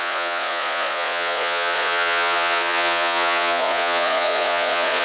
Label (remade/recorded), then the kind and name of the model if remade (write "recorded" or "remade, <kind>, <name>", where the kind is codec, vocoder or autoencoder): remade, vocoder, Vocos